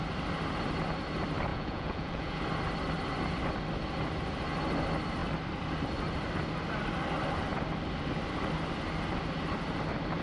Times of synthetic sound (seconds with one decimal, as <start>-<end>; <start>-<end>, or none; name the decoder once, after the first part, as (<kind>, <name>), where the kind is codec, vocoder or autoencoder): 1.5-2.4 (vocoder, Vocos)